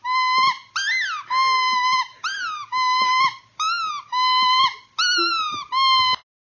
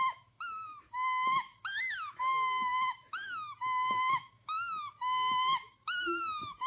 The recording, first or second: first